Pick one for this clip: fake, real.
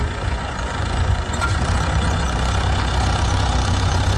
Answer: fake